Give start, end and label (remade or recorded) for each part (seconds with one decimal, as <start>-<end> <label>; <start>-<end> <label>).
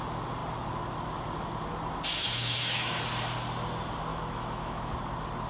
0.0-2.2 recorded; 2.2-3.0 remade; 3.0-4.1 recorded; 4.1-4.9 remade; 4.9-5.5 recorded